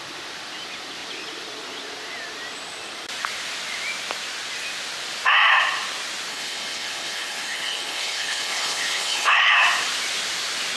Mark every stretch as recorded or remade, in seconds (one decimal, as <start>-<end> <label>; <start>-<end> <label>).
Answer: 0.0-6.3 recorded; 6.3-9.5 remade; 9.5-10.8 recorded